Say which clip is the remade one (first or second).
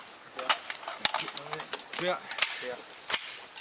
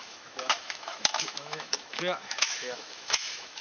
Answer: second